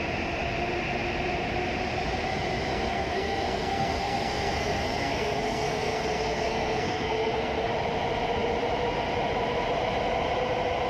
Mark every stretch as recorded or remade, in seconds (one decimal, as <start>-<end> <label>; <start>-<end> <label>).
0.0-2.7 recorded; 2.7-7.7 remade; 7.7-10.9 recorded